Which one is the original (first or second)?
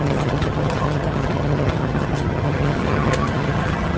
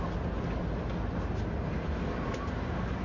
second